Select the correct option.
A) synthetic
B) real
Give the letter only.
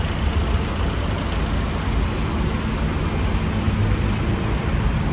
B